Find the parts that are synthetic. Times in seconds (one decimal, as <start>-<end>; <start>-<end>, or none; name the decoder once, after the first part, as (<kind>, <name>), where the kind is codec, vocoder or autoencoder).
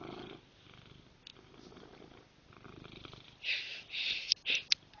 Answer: none